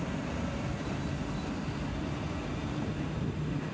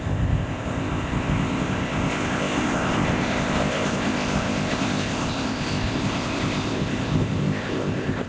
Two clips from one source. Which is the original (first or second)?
first